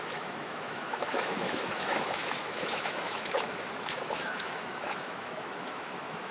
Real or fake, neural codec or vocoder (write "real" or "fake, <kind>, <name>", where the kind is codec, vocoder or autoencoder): fake, autoencoder, DAC-VAE